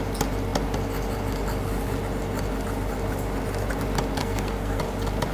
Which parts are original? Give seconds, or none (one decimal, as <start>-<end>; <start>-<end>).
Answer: 0.0-4.2; 4.8-5.3